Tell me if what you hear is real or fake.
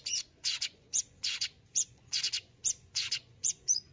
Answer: fake